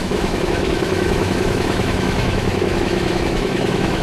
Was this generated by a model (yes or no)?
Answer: yes